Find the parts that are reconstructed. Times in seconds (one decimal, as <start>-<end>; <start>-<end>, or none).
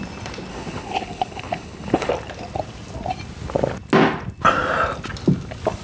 0.5-2.1